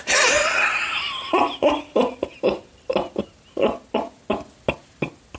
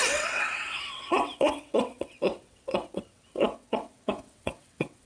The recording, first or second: first